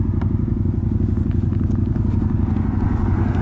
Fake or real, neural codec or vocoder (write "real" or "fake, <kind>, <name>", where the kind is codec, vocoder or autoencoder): real